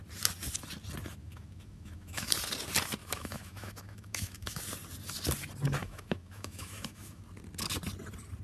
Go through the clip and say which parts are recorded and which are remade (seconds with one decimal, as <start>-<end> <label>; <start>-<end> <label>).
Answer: 0.0-1.2 recorded; 1.2-2.3 remade; 2.3-3.0 recorded; 3.0-4.6 remade; 4.6-5.8 recorded; 5.8-7.2 remade; 7.2-8.4 recorded

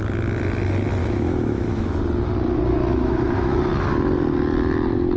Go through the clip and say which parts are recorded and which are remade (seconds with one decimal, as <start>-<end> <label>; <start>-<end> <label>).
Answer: 0.0-1.0 recorded; 1.0-2.0 remade; 2.0-2.7 recorded; 2.7-3.6 remade; 3.6-5.2 recorded

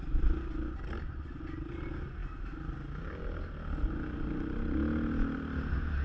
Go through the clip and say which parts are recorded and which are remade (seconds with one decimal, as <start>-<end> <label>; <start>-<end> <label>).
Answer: 0.0-6.0 recorded

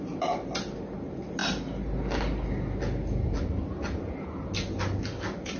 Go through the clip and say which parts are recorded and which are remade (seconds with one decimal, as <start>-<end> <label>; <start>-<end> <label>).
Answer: 0.0-5.6 recorded

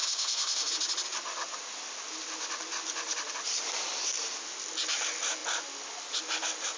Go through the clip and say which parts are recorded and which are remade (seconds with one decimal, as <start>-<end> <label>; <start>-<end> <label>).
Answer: 0.0-0.7 remade; 0.7-6.8 recorded

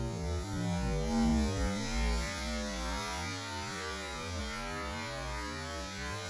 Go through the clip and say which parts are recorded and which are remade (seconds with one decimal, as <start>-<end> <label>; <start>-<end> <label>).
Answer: 0.0-6.3 recorded